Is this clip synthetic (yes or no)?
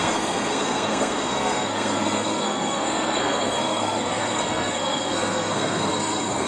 yes